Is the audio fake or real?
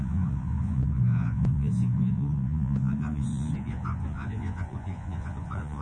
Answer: fake